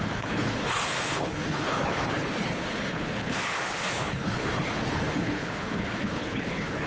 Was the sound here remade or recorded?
remade